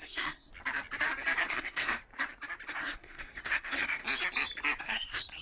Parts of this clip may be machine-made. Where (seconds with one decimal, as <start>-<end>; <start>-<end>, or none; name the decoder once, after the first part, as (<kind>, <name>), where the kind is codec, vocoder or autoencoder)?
0.0-0.5 (codec, SNAC); 1.5-2.0; 2.7-4.0; 4.8-5.4